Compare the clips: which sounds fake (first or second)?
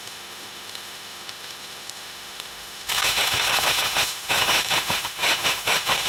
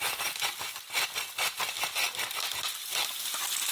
first